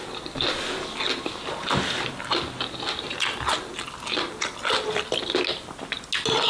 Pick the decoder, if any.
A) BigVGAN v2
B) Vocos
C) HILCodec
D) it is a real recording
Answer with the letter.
D